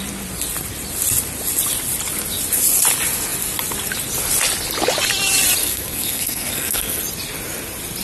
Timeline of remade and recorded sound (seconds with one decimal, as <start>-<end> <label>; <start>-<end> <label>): 0.0-5.6 recorded; 5.6-7.0 remade; 7.0-8.0 recorded